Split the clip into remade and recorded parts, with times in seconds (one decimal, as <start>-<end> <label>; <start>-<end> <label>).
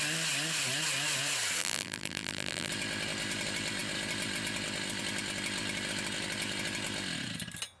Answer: 0.0-1.6 recorded; 1.6-2.7 remade; 2.7-7.8 recorded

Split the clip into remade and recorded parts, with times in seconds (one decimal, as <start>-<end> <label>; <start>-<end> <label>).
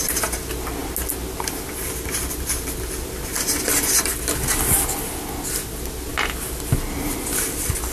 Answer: 0.0-7.9 recorded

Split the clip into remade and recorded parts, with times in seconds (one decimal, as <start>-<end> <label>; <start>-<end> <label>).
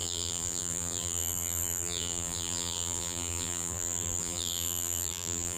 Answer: 0.0-5.6 remade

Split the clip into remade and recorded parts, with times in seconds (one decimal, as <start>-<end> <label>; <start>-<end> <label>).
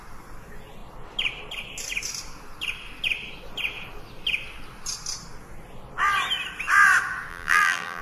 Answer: 0.0-7.3 recorded; 7.3-8.0 remade